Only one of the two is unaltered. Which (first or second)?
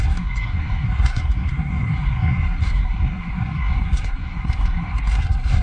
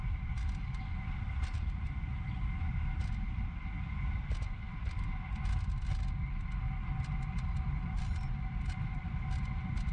second